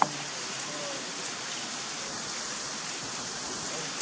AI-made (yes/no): no